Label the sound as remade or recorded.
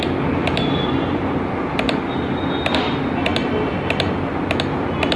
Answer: recorded